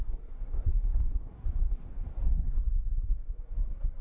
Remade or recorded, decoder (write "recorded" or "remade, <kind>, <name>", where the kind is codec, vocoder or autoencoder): remade, codec, SNAC